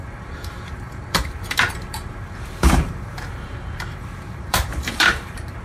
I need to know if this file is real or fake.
fake